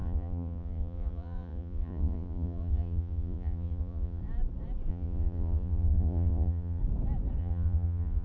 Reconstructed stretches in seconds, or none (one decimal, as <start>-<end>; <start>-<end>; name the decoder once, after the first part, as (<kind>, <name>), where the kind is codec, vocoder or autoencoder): 0.0-4.2 (vocoder, Vocos); 4.9-6.8; 7.4-8.2